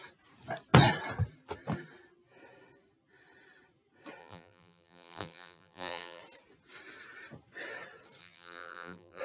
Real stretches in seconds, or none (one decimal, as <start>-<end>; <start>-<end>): 0.0-4.2; 6.2-8.2